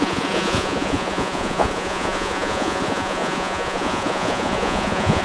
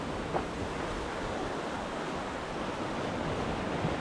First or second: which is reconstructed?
first